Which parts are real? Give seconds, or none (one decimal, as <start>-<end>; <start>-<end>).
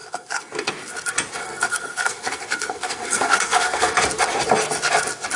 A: 0.7-1.4; 3.9-5.4